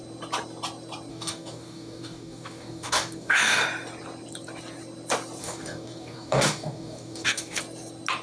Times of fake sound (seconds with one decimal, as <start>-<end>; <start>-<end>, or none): 1.1-3.6; 5.4-7.6